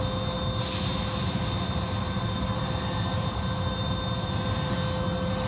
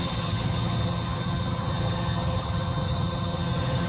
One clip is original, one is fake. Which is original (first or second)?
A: first